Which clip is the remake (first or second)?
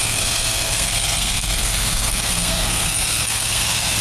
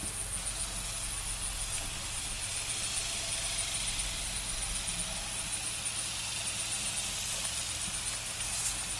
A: first